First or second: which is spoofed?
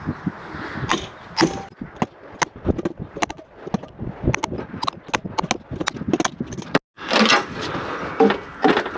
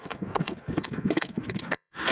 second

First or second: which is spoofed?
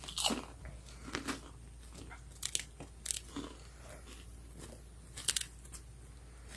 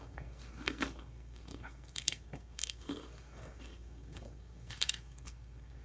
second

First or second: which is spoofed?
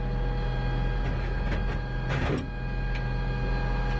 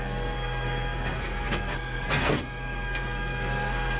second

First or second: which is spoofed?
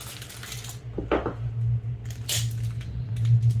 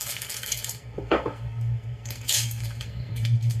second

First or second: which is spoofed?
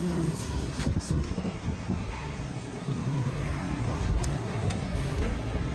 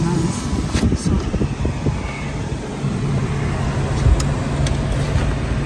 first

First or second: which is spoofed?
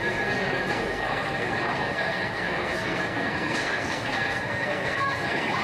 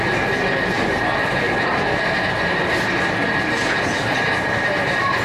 first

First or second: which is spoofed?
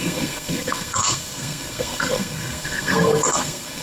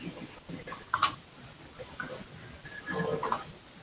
first